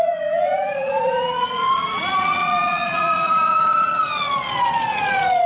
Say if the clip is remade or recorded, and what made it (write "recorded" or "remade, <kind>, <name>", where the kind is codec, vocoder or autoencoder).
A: remade, vocoder, Vocos